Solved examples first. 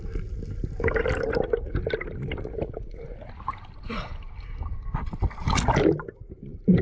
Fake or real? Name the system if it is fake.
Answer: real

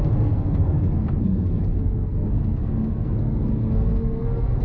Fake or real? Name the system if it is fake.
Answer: fake, codec, SNAC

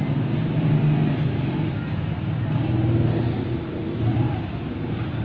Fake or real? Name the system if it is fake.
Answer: real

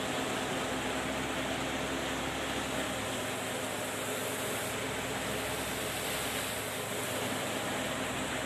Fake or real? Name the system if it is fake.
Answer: real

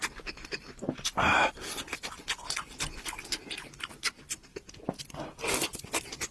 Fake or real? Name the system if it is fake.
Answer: real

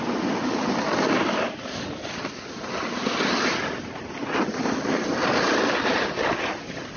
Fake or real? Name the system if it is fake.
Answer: real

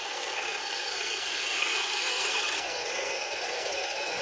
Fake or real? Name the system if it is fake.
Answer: fake, codec, SNAC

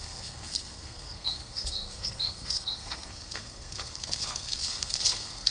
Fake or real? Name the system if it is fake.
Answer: fake, codec, SNAC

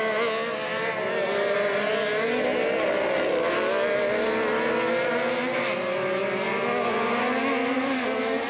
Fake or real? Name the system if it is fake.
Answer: real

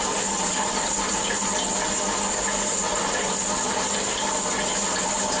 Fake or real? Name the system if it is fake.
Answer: real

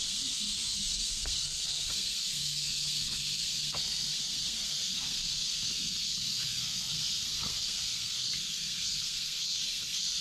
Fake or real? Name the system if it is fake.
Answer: fake, codec, SNAC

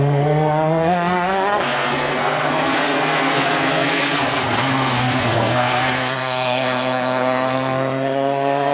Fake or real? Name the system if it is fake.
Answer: fake, codec, SNAC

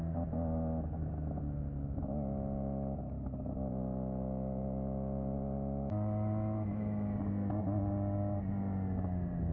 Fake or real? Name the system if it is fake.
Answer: real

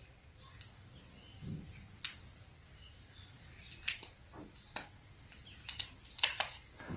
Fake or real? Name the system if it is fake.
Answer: real